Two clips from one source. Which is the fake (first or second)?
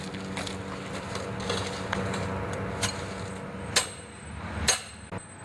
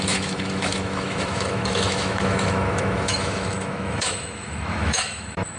second